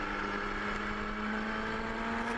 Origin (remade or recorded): recorded